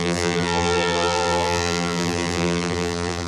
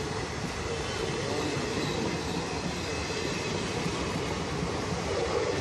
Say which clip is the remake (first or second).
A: first